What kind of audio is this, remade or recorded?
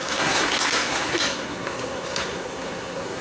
remade